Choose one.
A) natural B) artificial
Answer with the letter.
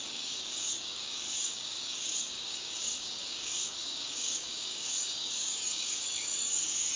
B